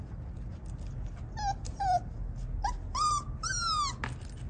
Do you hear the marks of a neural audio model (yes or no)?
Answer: no